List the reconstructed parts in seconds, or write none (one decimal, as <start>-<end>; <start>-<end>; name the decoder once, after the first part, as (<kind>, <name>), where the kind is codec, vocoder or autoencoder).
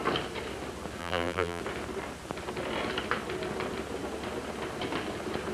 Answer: 1.0-1.6 (vocoder, BigVGAN v2)